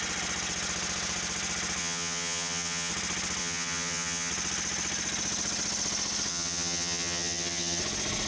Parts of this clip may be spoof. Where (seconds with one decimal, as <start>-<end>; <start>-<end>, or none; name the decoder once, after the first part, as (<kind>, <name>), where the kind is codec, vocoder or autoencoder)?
1.8-2.9 (vocoder, HiFi-GAN); 3.4-4.3; 6.3-7.8